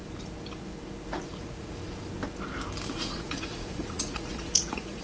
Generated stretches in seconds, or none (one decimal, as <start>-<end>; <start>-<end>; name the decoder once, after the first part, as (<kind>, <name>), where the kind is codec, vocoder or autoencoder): 1.1-1.8 (vocoder, Vocos); 2.9-5.0